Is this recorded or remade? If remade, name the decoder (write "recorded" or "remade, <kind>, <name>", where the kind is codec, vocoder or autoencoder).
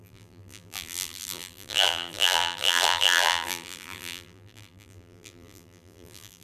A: remade, vocoder, BigVGAN v2